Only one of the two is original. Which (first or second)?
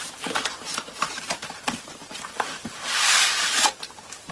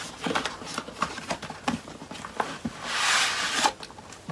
second